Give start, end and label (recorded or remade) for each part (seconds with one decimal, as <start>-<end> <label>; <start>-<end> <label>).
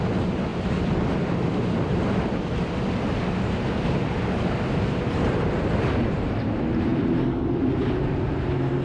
0.0-0.5 recorded; 0.5-2.8 remade; 2.8-8.8 recorded